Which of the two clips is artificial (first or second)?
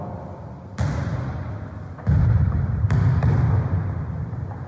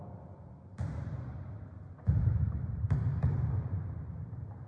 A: second